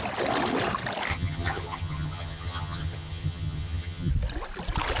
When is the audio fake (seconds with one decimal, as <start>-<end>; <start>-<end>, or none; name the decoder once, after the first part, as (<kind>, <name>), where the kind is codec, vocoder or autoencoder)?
1.1-4.1 (vocoder, HiFi-GAN)